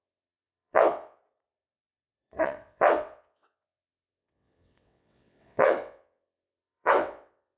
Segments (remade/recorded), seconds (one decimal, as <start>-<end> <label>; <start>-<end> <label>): 0.0-1.2 remade; 1.2-2.4 recorded; 2.4-7.6 remade